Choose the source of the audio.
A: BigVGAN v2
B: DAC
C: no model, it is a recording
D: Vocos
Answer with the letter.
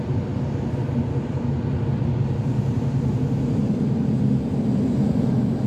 C